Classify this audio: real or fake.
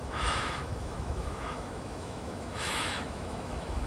fake